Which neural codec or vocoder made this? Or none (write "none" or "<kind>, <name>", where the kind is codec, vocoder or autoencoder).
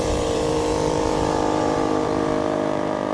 vocoder, BigVGAN v2